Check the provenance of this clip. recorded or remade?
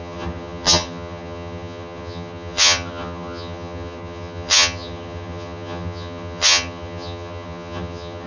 remade